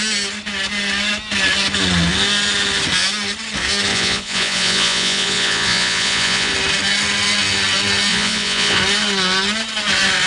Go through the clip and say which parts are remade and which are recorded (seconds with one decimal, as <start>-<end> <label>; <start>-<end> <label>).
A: 0.0-3.9 recorded; 3.9-6.5 remade; 6.5-8.1 recorded; 8.1-8.8 remade; 8.8-10.3 recorded